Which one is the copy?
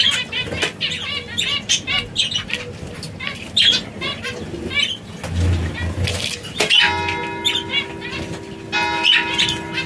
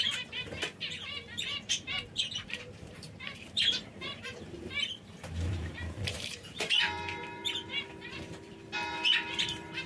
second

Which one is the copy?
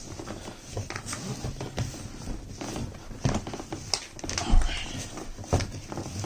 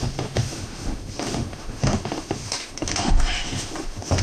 second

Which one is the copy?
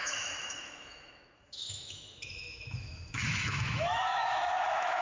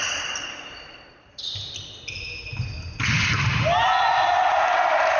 first